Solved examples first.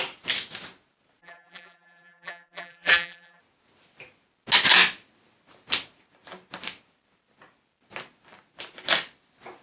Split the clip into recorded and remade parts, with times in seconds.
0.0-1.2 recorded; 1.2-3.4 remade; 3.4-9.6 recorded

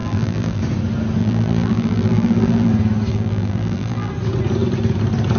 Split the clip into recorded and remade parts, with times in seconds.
0.0-0.6 remade; 0.6-1.2 recorded; 1.2-2.7 remade; 2.7-3.1 recorded; 3.1-4.1 remade; 4.1-5.4 recorded

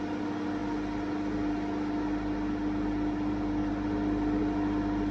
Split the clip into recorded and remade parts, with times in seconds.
0.0-5.1 recorded

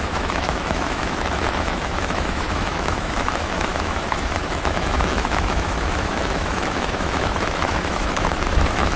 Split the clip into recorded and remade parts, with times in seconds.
0.0-9.0 remade

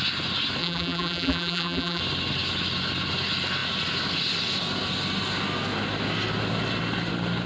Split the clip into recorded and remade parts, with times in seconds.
0.0-0.6 recorded; 0.6-2.0 remade; 2.0-7.5 recorded